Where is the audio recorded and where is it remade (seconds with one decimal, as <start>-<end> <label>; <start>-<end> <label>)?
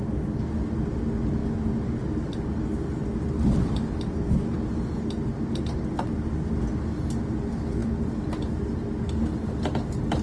0.0-10.2 recorded